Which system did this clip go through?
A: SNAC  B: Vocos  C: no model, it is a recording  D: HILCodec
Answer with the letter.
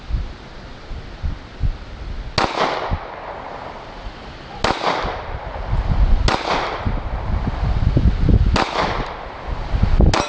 C